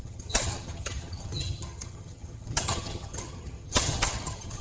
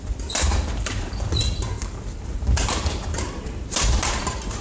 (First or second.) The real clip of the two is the second